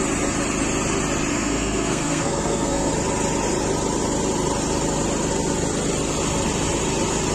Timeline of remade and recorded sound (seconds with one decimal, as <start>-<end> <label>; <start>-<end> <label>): 0.0-1.3 recorded; 1.3-2.9 remade; 2.9-7.3 recorded